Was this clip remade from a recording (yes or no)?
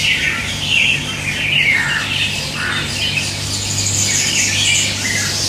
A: no